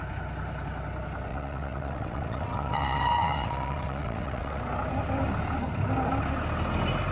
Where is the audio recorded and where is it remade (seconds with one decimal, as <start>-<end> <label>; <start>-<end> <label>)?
0.0-1.3 recorded; 1.3-4.6 remade; 4.6-7.1 recorded